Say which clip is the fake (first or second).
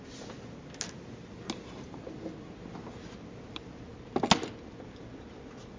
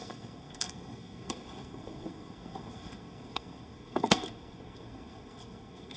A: second